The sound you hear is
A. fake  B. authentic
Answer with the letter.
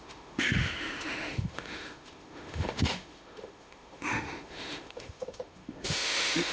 A